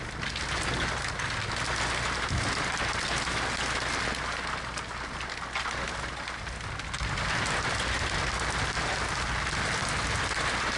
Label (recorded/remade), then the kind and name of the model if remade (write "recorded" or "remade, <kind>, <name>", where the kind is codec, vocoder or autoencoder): recorded